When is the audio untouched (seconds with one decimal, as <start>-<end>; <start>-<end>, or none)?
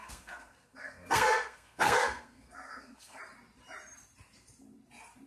3.2-5.3